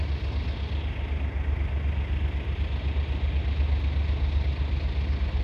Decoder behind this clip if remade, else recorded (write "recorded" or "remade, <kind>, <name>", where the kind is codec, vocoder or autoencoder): recorded